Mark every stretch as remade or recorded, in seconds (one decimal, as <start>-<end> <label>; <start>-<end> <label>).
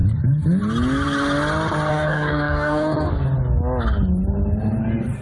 0.0-1.9 recorded; 1.9-3.1 remade; 3.1-5.2 recorded